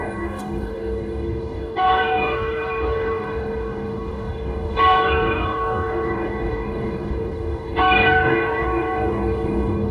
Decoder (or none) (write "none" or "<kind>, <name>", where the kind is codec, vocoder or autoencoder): codec, DAC